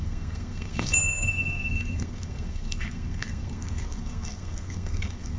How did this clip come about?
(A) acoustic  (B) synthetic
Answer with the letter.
B